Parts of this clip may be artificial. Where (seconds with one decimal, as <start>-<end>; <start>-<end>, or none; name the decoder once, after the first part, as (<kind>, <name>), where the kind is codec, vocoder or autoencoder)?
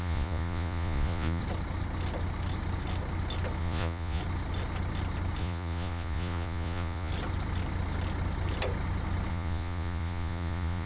0.0-1.4 (vocoder, Vocos); 3.6-4.2; 5.4-7.1; 9.3-10.9